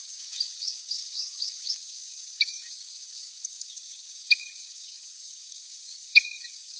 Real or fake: fake